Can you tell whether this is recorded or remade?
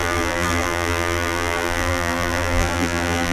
remade